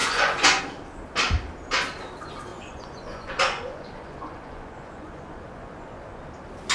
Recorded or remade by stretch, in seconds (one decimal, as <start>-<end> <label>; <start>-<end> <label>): 0.0-0.6 remade; 0.6-2.5 recorded; 2.5-6.2 remade; 6.2-6.7 recorded